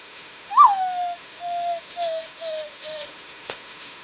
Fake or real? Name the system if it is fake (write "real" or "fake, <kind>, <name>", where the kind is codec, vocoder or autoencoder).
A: fake, autoencoder, DAC-VAE